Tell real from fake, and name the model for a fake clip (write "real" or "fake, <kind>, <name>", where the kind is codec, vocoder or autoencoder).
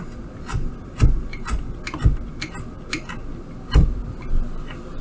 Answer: real